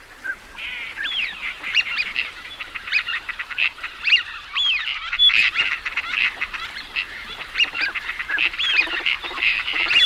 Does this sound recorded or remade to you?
remade